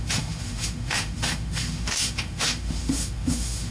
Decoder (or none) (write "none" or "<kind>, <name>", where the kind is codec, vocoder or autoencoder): autoencoder, DAC-VAE